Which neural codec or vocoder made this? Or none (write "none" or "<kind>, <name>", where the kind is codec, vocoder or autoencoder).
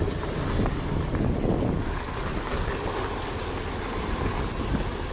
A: none